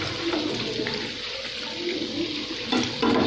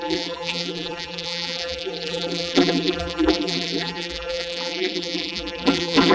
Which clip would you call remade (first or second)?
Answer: second